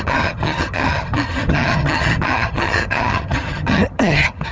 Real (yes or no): no